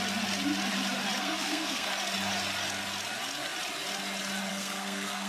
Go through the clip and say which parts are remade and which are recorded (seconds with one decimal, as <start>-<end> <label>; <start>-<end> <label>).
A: 0.0-1.2 recorded; 1.2-1.9 remade; 1.9-4.5 recorded; 4.5-5.3 remade